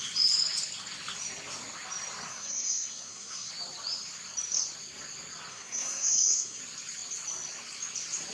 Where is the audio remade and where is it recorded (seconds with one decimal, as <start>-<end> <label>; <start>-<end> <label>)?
0.0-2.3 recorded; 2.3-3.5 remade; 3.5-5.5 recorded; 5.5-6.6 remade; 6.6-8.3 recorded